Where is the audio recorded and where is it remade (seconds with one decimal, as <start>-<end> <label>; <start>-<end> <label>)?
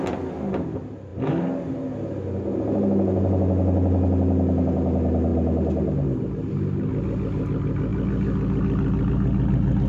0.0-9.9 recorded